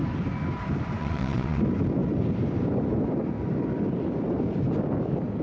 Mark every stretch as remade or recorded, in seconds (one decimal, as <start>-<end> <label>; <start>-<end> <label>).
0.0-1.0 recorded; 1.0-1.6 remade; 1.6-5.4 recorded